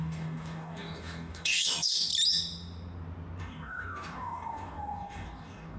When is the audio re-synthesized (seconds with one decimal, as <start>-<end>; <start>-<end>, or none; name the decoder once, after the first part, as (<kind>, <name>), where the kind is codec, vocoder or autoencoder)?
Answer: 0.0-2.1 (codec, DAC); 3.4-5.8